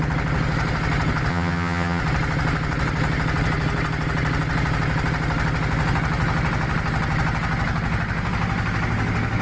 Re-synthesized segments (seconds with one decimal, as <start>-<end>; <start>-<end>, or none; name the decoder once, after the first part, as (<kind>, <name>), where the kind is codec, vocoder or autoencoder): 1.3-2.0 (vocoder, HiFi-GAN)